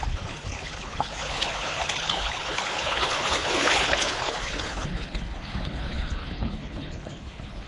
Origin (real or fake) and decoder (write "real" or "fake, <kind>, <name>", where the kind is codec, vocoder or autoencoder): fake, codec, HILCodec